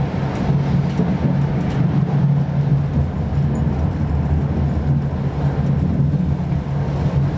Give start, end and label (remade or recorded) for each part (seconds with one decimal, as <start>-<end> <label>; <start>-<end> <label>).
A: 0.0-7.4 recorded